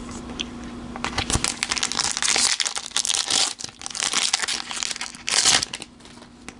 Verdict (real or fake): real